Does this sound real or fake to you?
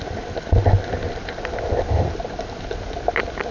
real